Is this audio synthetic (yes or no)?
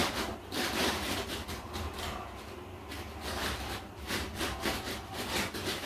no